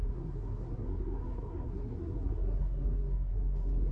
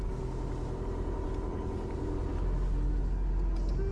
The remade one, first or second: first